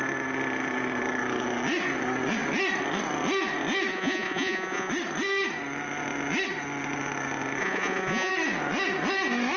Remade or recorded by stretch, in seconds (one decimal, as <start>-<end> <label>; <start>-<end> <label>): 0.0-3.9 recorded; 3.9-4.9 remade; 4.9-7.6 recorded; 7.6-8.3 remade; 8.3-9.6 recorded